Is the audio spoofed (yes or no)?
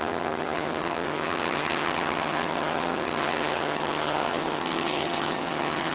yes